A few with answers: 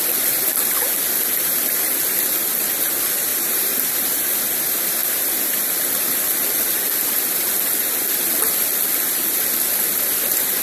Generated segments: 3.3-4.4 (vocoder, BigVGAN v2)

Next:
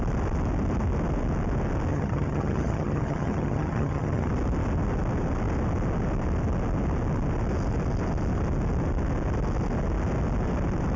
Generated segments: 1.9-4.3 (vocoder, HiFi-GAN)